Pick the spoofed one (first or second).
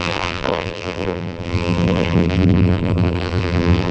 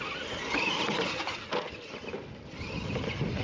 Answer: first